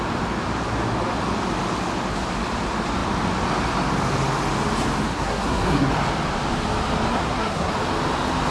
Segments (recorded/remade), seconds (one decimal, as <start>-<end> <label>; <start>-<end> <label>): 0.0-5.1 recorded; 5.1-5.9 remade; 5.9-7.1 recorded; 7.1-7.7 remade; 7.7-8.5 recorded